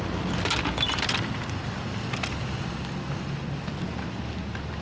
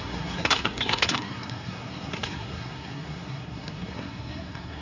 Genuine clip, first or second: first